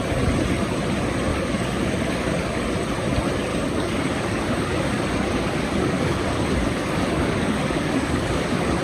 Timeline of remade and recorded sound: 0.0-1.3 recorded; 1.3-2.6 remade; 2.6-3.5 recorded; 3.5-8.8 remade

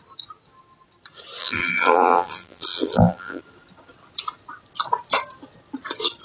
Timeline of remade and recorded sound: 0.0-1.4 recorded; 1.4-3.4 remade; 3.4-6.2 recorded